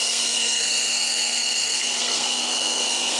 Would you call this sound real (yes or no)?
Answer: no